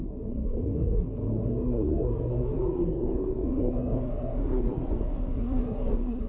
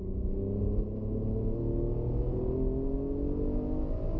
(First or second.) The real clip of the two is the second